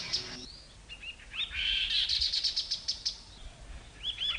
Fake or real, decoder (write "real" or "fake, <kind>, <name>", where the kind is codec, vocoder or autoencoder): real